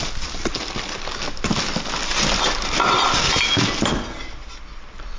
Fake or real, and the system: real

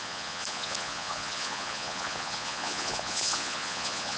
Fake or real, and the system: fake, vocoder, Vocos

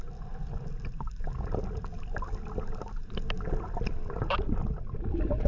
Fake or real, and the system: real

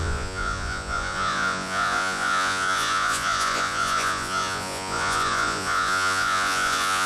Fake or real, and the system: fake, vocoder, Vocos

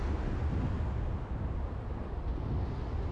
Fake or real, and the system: real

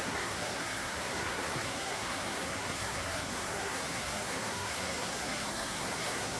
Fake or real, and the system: fake, codec, SNAC